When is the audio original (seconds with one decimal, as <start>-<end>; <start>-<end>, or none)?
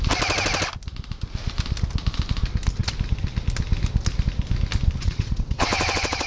0.0-5.0